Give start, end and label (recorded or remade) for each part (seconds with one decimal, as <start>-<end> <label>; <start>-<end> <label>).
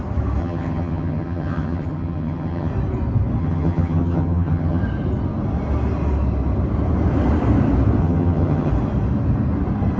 0.0-0.4 recorded; 0.4-2.7 remade; 2.7-3.4 recorded; 3.4-4.8 remade; 4.8-8.0 recorded; 8.0-8.7 remade; 8.7-10.0 recorded